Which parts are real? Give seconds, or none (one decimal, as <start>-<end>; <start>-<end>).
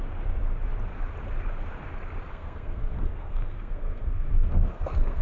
0.0-2.3